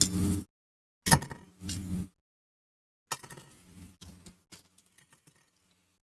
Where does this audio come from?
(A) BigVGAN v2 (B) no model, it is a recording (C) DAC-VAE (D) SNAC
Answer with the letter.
B